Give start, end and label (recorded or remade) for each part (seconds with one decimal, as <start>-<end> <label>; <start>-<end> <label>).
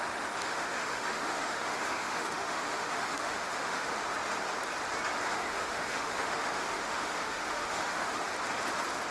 0.0-3.9 remade; 3.9-5.3 recorded; 5.3-8.3 remade; 8.3-9.1 recorded